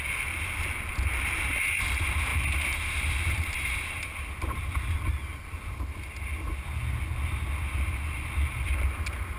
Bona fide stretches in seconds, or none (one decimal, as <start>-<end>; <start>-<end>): 0.0-2.3; 4.1-9.4